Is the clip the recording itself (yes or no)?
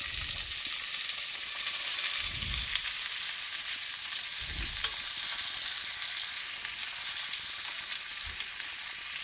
yes